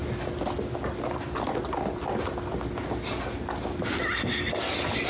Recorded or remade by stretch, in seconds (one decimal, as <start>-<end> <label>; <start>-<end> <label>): 0.0-5.1 recorded